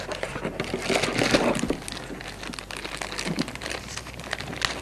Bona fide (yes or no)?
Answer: yes